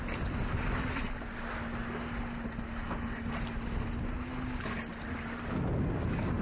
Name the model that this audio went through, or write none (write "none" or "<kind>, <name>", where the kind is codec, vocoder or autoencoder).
none